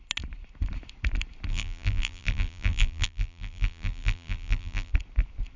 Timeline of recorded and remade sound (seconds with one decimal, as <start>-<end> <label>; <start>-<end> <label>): 0.0-1.5 recorded; 1.5-4.9 remade; 4.9-5.6 recorded